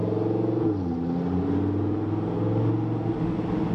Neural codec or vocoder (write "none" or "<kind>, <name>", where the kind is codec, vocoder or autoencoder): none